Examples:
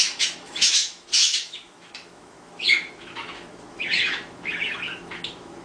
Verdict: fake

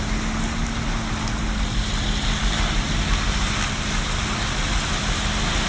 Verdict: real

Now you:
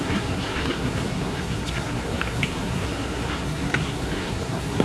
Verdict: fake